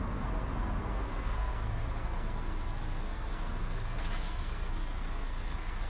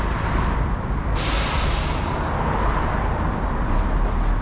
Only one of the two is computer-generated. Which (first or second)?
first